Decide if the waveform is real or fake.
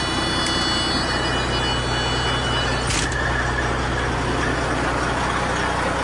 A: real